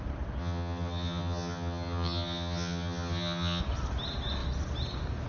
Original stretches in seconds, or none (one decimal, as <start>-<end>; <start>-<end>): 0.0-0.4; 3.6-5.3